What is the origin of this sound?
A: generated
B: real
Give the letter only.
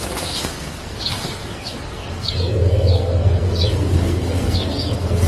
A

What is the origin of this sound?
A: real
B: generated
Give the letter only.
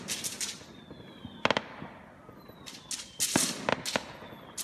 A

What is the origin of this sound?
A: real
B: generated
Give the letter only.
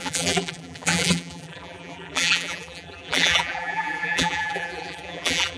B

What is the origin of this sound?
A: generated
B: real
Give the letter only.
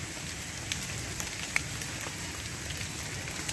B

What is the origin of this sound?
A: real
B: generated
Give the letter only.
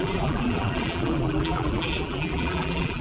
B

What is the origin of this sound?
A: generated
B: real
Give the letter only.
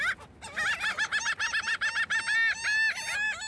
B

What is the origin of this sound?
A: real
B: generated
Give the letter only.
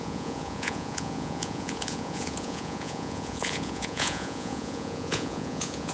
B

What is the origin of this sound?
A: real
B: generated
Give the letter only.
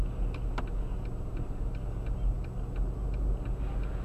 A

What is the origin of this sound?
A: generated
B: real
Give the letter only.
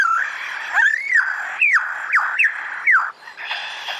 B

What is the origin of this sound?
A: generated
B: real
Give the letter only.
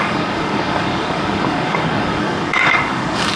A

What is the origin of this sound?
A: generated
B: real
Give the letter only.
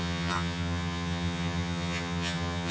A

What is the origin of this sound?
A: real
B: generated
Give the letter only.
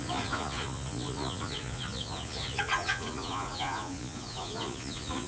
B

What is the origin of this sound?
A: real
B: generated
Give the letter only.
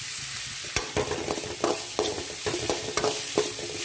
A